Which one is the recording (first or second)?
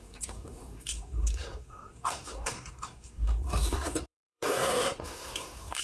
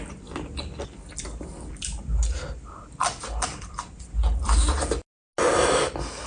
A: second